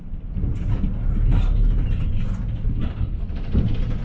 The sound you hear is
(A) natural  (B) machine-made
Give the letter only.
A